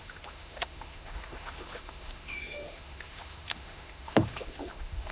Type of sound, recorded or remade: remade